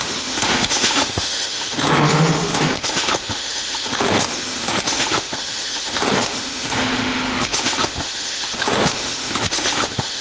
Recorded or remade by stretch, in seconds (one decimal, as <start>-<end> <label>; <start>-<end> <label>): 0.0-10.2 remade